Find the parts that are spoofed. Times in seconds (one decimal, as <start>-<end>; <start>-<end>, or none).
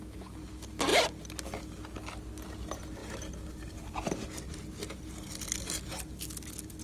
none